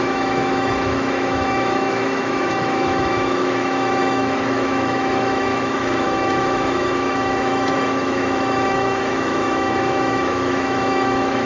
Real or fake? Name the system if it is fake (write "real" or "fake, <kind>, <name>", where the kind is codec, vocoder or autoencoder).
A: fake, autoencoder, DAC-VAE